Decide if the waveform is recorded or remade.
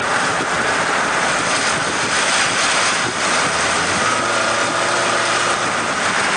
recorded